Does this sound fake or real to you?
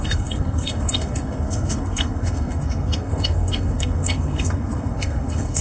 fake